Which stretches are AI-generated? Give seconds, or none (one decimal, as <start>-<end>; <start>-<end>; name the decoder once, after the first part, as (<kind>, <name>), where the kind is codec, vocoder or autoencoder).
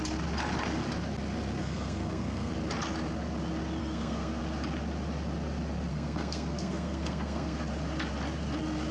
1.6-2.5 (codec, SNAC); 3.8-4.4; 5.9-7.6